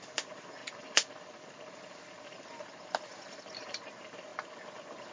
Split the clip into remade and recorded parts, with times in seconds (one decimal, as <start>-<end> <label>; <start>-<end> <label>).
0.0-5.1 recorded